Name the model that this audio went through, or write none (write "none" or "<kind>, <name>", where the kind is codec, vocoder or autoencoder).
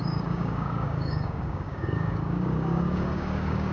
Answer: codec, DAC